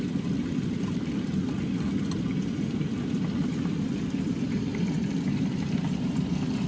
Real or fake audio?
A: fake